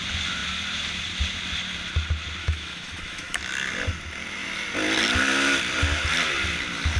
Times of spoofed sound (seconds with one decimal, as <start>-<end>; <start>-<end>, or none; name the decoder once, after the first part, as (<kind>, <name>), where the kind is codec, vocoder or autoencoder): 2.4-3.4 (autoencoder, DAC-VAE)